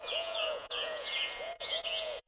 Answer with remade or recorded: remade